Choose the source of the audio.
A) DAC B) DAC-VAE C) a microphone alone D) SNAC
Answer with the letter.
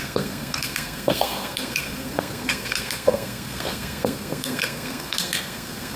D